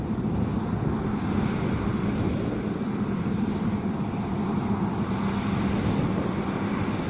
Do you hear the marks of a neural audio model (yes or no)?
yes